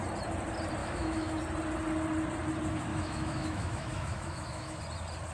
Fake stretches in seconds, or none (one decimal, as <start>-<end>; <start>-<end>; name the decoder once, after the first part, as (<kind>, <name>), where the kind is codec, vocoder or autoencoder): 0.8-1.4 (autoencoder, DAC-VAE); 2.9-4.8